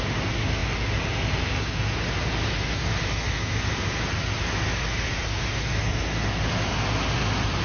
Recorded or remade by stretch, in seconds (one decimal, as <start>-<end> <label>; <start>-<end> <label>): 0.0-7.6 recorded